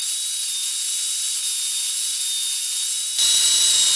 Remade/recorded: recorded